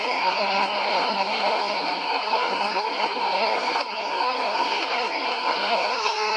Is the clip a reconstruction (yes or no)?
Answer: yes